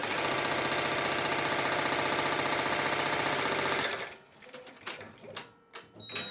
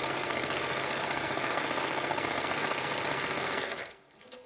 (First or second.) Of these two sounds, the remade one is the second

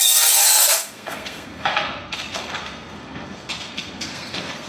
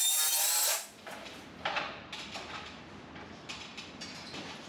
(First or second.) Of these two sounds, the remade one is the first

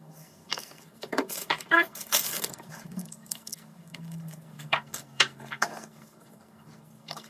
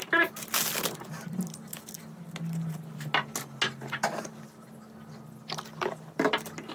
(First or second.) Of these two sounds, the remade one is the first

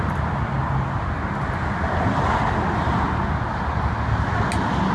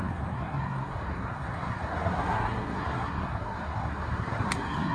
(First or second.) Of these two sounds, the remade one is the second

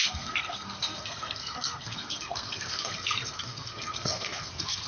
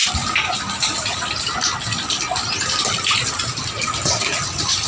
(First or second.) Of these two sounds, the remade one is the first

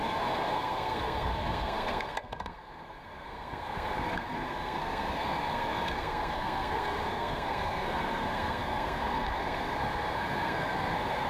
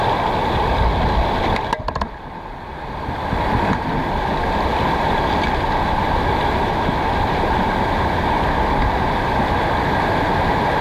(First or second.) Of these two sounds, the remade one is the first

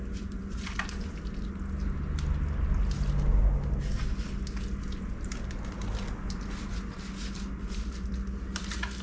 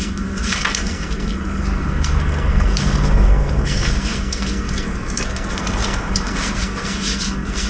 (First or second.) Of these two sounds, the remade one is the second